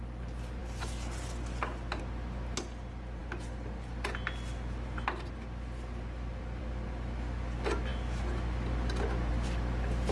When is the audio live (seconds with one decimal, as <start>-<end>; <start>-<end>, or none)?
0.0-10.1

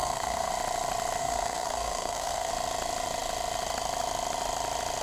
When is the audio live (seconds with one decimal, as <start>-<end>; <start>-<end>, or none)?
0.5-1.2; 2.5-5.0

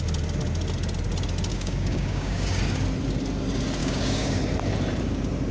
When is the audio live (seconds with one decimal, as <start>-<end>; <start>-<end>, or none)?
0.0-1.5; 2.6-3.8; 4.4-5.5

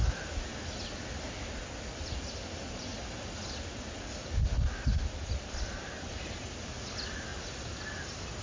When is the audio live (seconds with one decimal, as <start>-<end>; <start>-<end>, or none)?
0.0-8.4